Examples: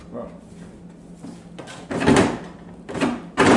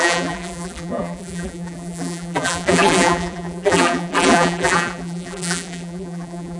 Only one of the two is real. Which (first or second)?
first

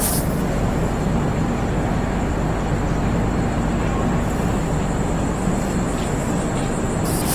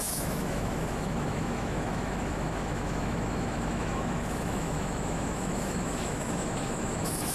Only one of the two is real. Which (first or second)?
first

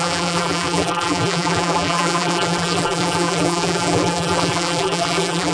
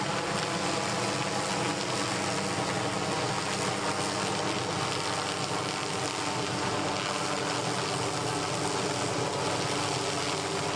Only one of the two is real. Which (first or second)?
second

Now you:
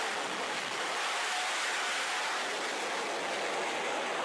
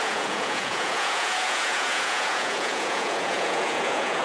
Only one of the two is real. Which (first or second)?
first